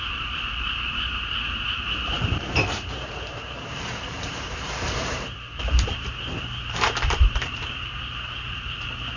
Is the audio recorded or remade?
remade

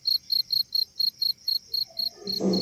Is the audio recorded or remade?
recorded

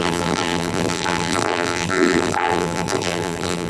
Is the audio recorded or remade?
remade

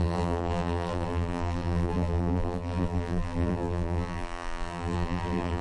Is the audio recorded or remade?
remade